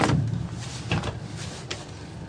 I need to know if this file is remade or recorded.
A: recorded